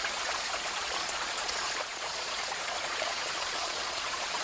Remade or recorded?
remade